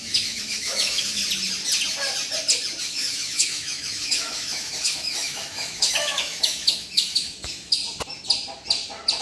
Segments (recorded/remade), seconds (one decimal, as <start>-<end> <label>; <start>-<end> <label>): 0.0-1.2 remade; 1.2-2.8 recorded; 2.8-7.8 remade; 7.8-9.2 recorded